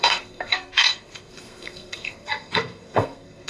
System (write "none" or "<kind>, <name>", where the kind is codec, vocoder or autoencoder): codec, SNAC